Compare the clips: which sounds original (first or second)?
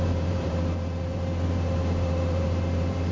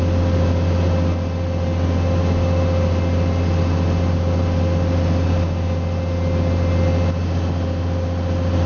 second